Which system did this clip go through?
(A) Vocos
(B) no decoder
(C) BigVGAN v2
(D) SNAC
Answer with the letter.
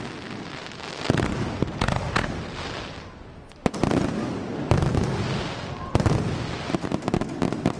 B